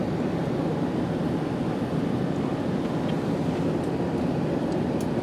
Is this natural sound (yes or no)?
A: yes